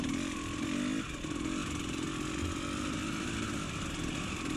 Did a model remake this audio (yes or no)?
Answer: yes